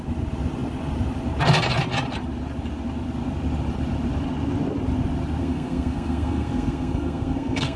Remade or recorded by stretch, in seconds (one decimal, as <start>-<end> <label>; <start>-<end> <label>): 0.0-5.4 recorded; 5.4-7.8 remade